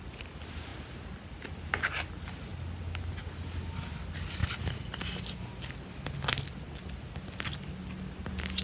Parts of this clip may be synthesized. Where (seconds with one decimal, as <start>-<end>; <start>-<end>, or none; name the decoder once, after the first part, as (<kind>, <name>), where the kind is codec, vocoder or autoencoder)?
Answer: none